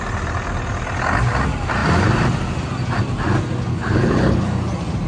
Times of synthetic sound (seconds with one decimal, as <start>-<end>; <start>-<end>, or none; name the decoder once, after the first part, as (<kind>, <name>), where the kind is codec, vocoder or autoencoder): 3.7-4.4 (codec, HILCodec)